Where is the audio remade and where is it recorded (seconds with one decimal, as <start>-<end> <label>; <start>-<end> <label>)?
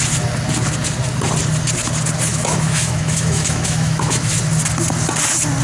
0.0-2.3 recorded; 2.3-4.4 remade; 4.4-5.6 recorded